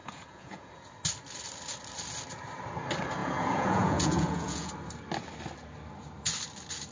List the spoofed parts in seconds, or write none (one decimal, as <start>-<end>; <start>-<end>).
0.0-0.7; 3.2-4.7